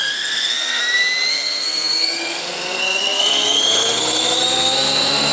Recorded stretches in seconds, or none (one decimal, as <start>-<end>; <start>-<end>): 0.8-1.3

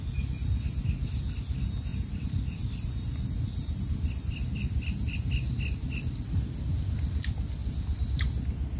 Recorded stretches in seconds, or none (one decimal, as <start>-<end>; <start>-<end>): 0.0-1.9; 5.3-8.8

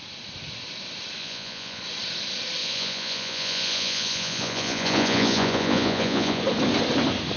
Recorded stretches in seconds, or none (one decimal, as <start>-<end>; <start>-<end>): 0.0-1.2; 1.8-2.6; 6.4-7.4